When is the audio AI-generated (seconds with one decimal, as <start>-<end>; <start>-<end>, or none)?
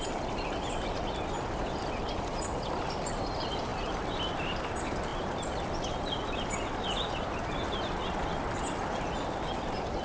none